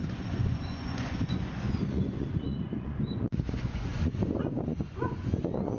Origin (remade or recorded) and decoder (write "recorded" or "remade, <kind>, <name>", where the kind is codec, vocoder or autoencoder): remade, vocoder, Vocos